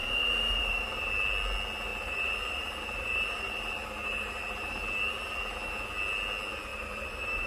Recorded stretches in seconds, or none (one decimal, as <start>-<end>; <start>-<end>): 1.1-1.9; 4.8-6.7